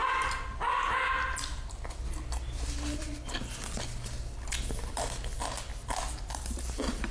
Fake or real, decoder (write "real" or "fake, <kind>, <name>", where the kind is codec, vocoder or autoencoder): real